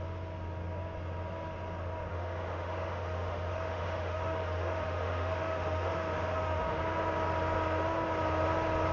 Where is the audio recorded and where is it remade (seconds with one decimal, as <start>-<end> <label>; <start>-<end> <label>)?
0.0-2.1 recorded; 2.1-6.8 remade; 6.8-8.9 recorded